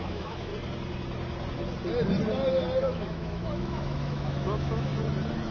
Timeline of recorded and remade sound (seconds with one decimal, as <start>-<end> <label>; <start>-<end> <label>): 0.0-0.5 remade; 0.5-2.8 recorded; 2.8-4.9 remade; 4.9-5.5 recorded